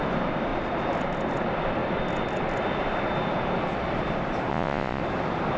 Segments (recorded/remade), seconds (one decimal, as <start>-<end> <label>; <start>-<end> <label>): 0.0-4.5 recorded; 4.5-5.0 remade; 5.0-5.6 recorded